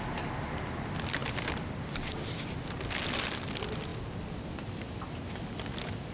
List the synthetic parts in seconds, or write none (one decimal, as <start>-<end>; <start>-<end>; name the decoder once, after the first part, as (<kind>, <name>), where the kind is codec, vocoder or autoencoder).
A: none